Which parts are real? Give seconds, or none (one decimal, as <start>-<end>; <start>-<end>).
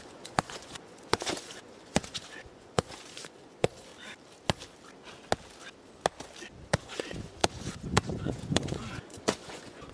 3.9-6.7